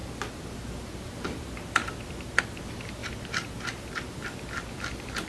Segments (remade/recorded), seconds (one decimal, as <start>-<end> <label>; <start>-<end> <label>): 0.0-2.4 recorded; 2.4-3.0 remade; 3.0-5.3 recorded